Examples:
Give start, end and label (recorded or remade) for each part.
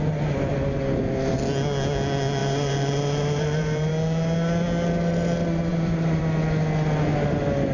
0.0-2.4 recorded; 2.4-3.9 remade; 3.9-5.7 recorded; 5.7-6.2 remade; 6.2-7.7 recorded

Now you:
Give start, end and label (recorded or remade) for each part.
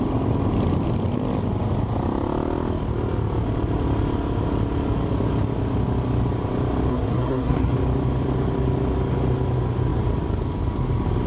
0.0-6.9 recorded; 6.9-7.7 remade; 7.7-11.3 recorded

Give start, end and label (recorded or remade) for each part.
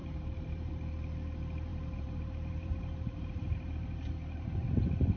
0.0-0.7 remade; 0.7-1.7 recorded; 1.7-4.8 remade; 4.8-5.2 recorded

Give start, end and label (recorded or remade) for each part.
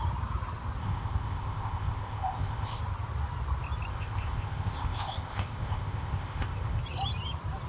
0.0-0.8 recorded; 0.8-2.8 remade; 2.8-3.9 recorded; 3.9-6.8 remade; 6.8-7.7 recorded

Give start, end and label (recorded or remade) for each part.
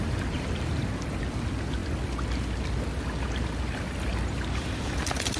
0.0-5.4 recorded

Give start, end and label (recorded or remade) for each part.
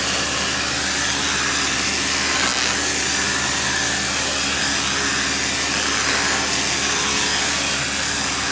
0.0-8.5 recorded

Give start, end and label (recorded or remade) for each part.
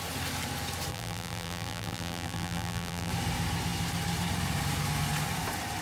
0.0-0.9 recorded; 0.9-3.1 remade; 3.1-5.8 recorded